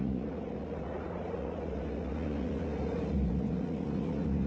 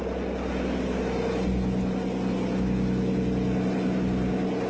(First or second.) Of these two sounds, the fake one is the first